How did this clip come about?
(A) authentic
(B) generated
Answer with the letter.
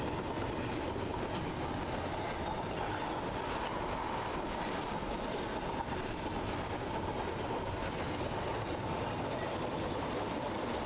A